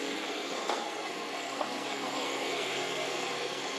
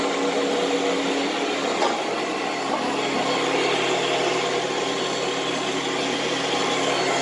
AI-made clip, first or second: first